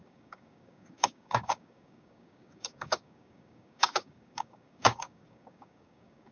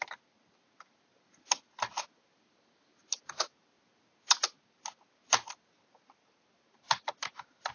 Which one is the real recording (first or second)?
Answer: second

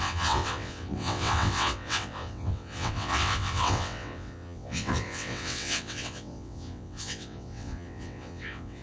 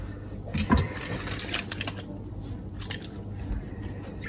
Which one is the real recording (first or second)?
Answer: second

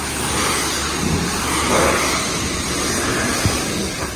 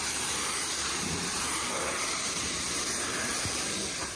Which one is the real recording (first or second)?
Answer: first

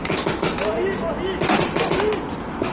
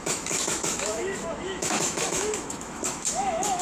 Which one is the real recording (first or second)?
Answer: first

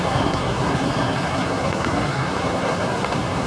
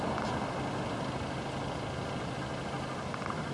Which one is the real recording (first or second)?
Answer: second